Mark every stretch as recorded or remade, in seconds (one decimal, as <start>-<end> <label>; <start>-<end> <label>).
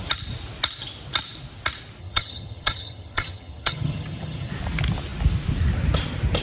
0.0-2.0 recorded; 2.0-4.5 remade; 4.5-6.4 recorded